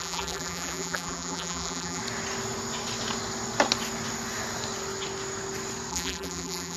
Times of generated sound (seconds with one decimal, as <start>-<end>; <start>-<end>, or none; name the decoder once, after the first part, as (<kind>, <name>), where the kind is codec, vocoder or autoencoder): 0.0-2.0 (vocoder, BigVGAN v2); 5.9-6.8